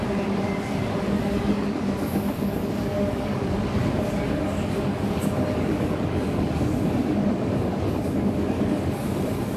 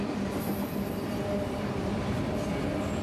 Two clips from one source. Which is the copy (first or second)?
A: first